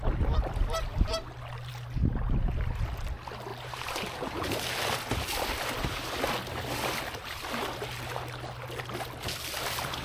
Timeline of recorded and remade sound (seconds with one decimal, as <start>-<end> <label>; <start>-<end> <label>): 0.0-3.5 recorded; 3.5-4.6 remade; 4.6-10.0 recorded

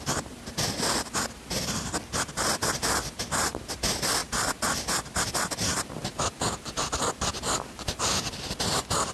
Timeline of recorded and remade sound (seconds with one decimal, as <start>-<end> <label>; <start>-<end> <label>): 0.0-9.1 recorded